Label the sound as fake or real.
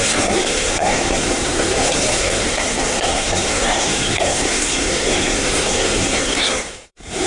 fake